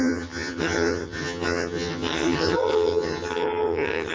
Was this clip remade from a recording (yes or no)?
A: yes